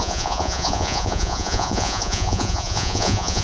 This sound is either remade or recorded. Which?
remade